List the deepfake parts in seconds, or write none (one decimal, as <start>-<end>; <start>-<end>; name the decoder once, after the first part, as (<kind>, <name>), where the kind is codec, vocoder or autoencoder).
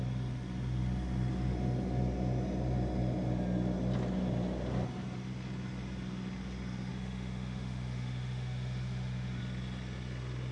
6.9-9.4 (autoencoder, DAC-VAE)